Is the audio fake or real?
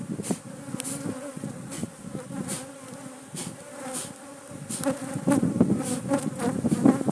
real